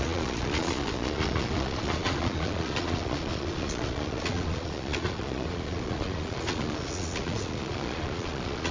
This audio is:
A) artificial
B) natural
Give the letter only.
A